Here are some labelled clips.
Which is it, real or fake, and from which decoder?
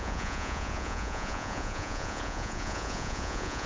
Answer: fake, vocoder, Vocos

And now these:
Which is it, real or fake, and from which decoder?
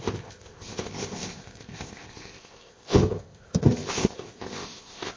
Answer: fake, codec, ZipCodec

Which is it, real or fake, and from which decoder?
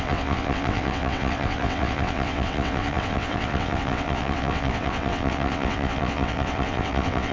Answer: fake, vocoder, WaveNeXt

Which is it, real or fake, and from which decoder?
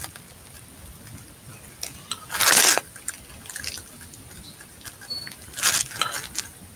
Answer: real